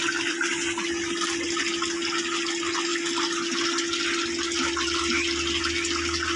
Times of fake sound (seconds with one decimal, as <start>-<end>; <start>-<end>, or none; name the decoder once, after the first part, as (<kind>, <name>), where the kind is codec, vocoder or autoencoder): none